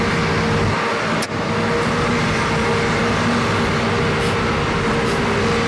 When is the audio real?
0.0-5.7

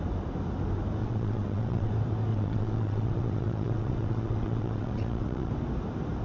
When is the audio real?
0.0-1.0; 1.9-2.3; 5.5-6.2